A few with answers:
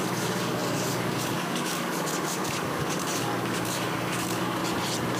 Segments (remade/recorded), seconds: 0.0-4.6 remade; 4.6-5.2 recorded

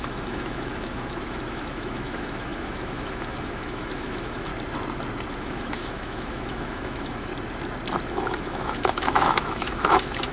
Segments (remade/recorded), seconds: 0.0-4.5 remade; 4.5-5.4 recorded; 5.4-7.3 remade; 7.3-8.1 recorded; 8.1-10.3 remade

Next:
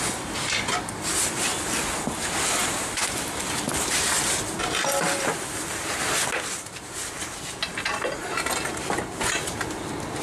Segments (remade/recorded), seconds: 0.0-2.6 recorded; 2.6-5.9 remade; 5.9-10.2 recorded